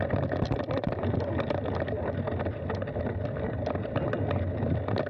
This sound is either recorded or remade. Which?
recorded